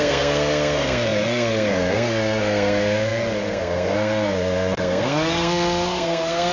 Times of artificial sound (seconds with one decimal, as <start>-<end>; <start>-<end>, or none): 0.0-6.5